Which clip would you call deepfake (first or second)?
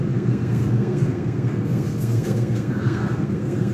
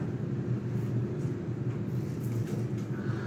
first